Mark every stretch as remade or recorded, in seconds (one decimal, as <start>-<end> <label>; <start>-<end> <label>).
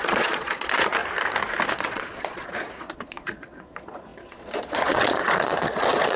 0.0-1.0 remade; 1.0-1.7 recorded; 1.7-6.2 remade